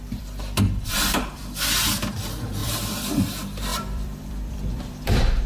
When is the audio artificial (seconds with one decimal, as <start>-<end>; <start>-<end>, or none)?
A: 0.0-1.4; 2.1-5.5